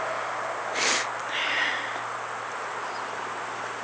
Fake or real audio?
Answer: real